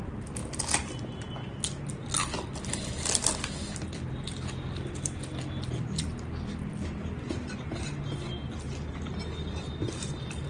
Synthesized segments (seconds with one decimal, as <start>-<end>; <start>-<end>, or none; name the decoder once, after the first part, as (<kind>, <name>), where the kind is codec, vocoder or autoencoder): none